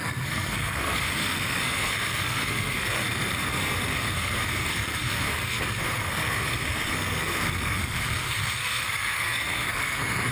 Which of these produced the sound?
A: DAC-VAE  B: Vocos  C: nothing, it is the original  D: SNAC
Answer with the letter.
D